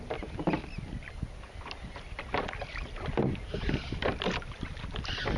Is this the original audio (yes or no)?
yes